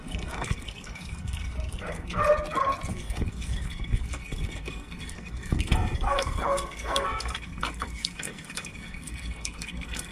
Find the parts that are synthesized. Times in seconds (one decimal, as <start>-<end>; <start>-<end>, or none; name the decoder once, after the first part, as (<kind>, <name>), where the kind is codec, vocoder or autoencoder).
0.0-2.2 (codec, SNAC); 2.9-10.1